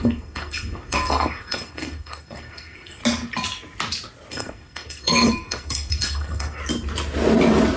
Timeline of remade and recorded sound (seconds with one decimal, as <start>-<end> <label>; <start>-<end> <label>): 0.0-3.0 remade; 3.0-4.3 recorded; 4.3-6.6 remade; 6.6-7.8 recorded